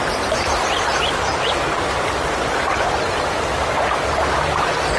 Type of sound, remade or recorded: recorded